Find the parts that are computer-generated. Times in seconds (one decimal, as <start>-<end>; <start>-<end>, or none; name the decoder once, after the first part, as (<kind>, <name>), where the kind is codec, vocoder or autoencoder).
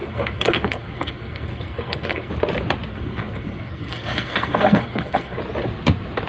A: 0.0-2.3 (codec, SNAC); 2.9-5.4